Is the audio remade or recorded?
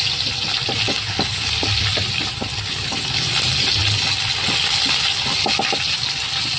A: recorded